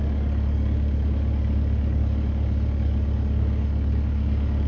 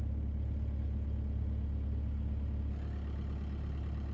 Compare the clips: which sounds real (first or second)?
second